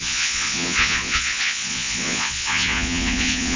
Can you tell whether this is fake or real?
fake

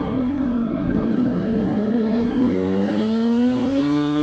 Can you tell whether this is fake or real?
fake